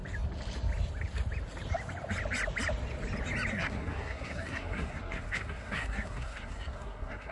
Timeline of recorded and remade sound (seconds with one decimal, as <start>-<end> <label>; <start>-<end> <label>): 0.0-3.5 recorded; 3.5-7.3 remade